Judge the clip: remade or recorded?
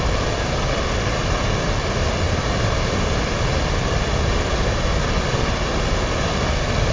recorded